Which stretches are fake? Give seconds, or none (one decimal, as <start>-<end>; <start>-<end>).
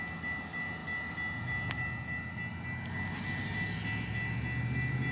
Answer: none